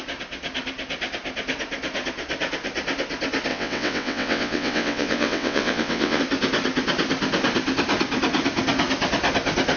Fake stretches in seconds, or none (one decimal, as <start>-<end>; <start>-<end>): 3.5-6.2